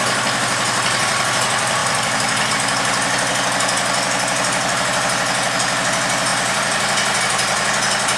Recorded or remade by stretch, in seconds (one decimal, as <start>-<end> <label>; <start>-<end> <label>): 0.0-1.8 recorded; 1.8-2.5 remade; 2.5-6.3 recorded; 6.3-7.2 remade; 7.2-8.2 recorded